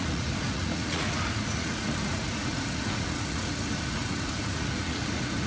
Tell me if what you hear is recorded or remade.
remade